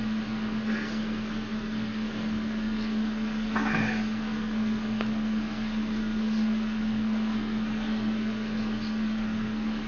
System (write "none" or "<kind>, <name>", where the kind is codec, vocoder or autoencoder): codec, SNAC